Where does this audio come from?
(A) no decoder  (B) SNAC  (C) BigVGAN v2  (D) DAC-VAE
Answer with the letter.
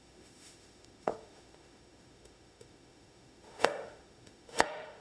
D